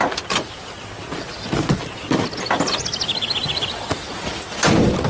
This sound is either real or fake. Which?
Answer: real